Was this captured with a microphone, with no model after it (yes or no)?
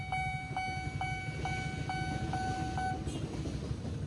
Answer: yes